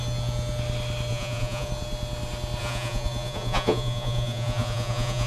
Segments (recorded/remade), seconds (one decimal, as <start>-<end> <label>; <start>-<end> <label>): 0.0-1.1 recorded; 1.1-1.7 remade; 1.7-2.6 recorded; 2.6-5.3 remade